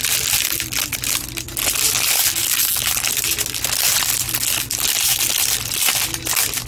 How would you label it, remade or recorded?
recorded